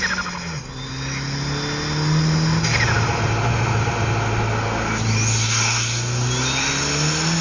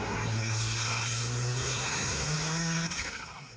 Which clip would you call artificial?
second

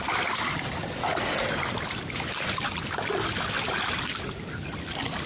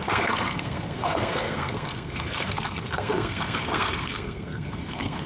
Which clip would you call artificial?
second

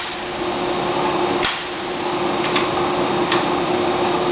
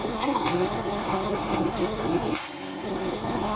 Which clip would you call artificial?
second